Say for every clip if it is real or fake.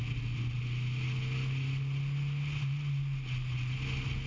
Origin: real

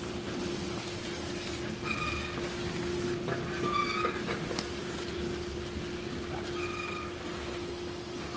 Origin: real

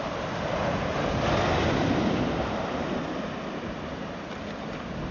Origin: real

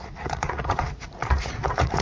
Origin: fake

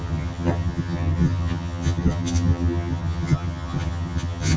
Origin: fake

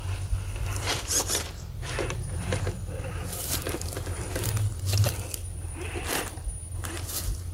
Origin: fake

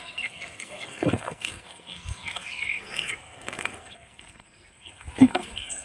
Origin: fake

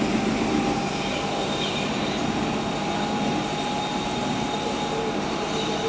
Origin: real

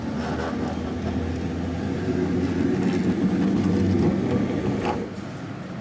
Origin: real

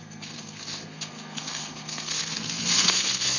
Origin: fake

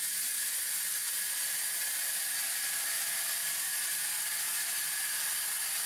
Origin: real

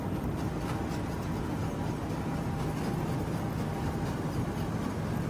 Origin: real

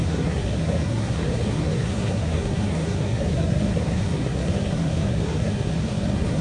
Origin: fake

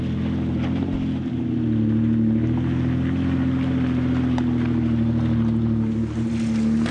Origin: real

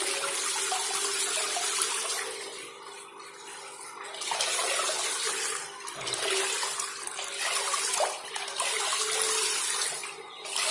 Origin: real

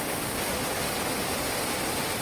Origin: real